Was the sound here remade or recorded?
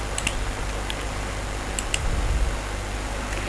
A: recorded